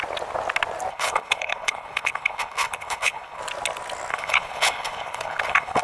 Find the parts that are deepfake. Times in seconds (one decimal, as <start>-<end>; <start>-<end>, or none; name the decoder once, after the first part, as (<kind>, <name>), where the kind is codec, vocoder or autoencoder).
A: 0.9-3.4 (codec, HILCodec); 4.1-5.8